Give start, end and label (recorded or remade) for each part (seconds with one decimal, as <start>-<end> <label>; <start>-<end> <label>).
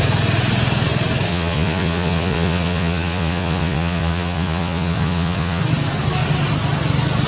0.0-1.3 recorded; 1.3-5.6 remade; 5.6-7.3 recorded